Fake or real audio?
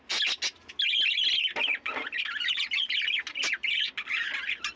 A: real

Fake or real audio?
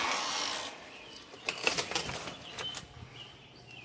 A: real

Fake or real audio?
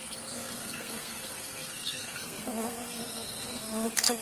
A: fake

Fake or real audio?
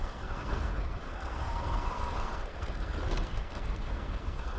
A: fake